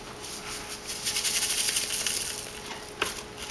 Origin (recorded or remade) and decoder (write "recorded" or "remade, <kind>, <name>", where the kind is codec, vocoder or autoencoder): recorded